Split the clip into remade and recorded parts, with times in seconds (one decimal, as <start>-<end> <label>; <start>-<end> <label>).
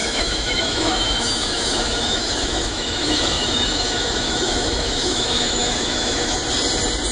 0.0-6.4 remade; 6.4-7.1 recorded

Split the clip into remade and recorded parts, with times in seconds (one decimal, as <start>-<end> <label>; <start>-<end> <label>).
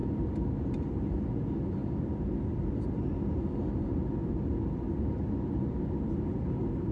0.0-6.9 recorded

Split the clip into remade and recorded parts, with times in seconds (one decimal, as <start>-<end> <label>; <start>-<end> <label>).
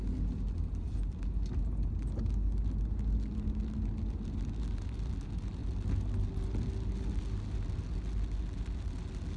0.0-9.4 recorded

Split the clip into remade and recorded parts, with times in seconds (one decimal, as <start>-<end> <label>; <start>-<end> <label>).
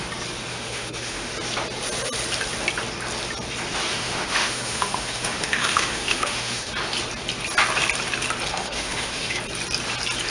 0.0-0.5 recorded; 0.5-1.3 remade; 1.3-3.9 recorded; 3.9-6.7 remade; 6.7-8.5 recorded; 8.5-9.4 remade; 9.4-10.3 recorded